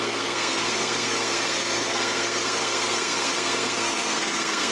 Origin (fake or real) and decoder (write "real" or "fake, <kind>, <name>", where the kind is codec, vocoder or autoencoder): fake, codec, SNAC